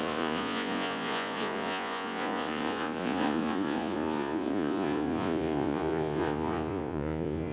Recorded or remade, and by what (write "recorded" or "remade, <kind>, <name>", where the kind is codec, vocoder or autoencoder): remade, vocoder, Vocos